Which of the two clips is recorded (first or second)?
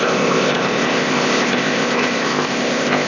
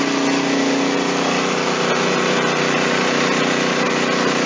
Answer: second